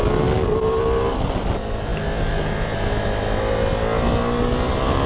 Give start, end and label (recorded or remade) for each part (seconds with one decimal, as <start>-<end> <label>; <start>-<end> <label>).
0.0-5.1 recorded